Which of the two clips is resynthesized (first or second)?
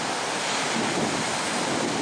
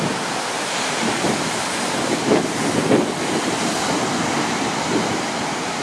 second